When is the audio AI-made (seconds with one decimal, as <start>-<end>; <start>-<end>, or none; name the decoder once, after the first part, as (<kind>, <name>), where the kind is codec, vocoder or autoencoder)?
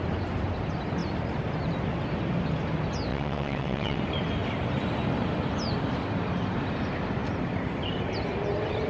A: 3.1-4.0 (vocoder, WaveNeXt)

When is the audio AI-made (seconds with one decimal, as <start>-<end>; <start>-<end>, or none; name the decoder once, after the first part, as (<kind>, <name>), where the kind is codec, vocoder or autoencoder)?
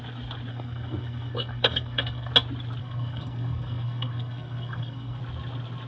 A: 0.5-2.3 (codec, SNAC); 2.8-5.2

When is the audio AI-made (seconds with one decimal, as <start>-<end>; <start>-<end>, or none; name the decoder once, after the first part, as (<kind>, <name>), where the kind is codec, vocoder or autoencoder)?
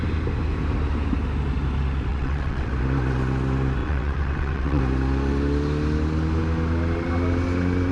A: 2.1-2.7 (vocoder, WaveNeXt); 3.8-4.8